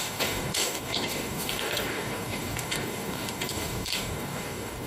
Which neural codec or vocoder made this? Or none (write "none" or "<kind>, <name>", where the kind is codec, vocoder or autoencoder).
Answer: codec, DAC